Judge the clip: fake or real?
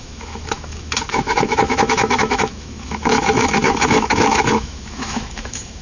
fake